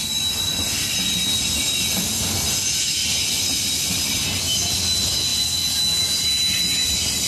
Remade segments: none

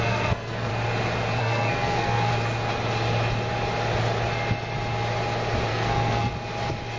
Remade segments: 0.0-0.7; 1.4-2.3; 5.7-6.3

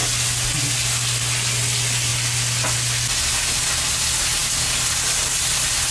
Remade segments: none